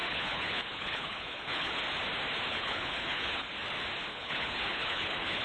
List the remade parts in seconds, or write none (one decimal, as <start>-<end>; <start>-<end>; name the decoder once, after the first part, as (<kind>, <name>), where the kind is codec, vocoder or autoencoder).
0.0-1.8 (codec, HILCodec); 2.5-3.5; 4.1-5.4